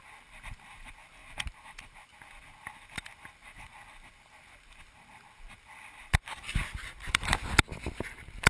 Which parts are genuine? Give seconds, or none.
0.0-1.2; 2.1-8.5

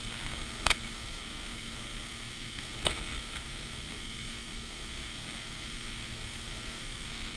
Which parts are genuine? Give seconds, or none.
none